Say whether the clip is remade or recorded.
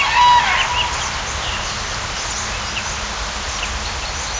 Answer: recorded